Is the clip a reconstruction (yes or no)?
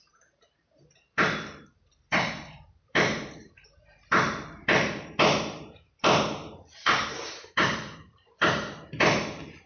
yes